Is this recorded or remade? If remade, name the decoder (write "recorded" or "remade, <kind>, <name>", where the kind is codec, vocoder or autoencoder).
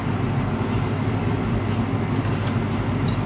recorded